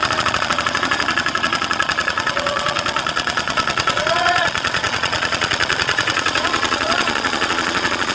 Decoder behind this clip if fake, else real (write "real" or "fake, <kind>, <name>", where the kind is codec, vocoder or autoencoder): fake, vocoder, Vocos